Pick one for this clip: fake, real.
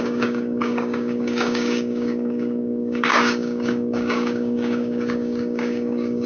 fake